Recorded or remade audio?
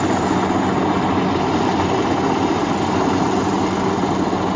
recorded